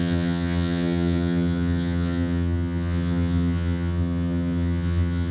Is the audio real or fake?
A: fake